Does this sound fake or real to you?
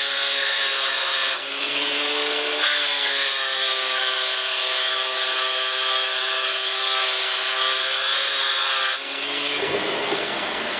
fake